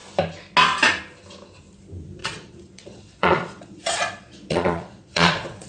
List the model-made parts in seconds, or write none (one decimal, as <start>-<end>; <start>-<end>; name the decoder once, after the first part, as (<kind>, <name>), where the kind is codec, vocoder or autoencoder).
2.2-5.7 (vocoder, Vocos)

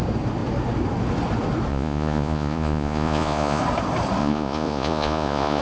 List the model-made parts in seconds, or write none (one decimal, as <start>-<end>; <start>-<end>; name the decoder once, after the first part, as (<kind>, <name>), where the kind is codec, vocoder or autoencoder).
1.7-3.6 (vocoder, Vocos); 4.2-5.6

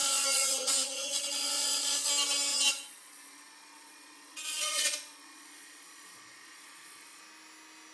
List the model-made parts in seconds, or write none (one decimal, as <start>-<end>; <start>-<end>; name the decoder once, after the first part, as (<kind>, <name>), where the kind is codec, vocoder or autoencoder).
0.0-2.1 (vocoder, Vocos); 2.5-7.2

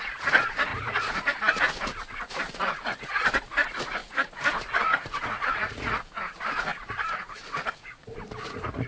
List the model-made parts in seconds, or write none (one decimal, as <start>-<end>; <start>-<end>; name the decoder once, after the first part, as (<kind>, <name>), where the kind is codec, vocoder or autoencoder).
0.0-8.9 (vocoder, Vocos)

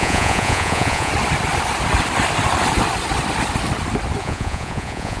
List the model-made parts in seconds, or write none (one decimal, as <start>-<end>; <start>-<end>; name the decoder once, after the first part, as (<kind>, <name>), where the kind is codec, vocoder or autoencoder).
0.0-1.1 (vocoder, Vocos); 4.2-5.2

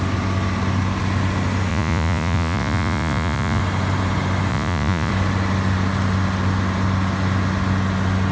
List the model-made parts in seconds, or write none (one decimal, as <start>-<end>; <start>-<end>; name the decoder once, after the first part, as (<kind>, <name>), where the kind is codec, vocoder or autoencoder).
1.7-3.6 (vocoder, Vocos); 4.5-5.1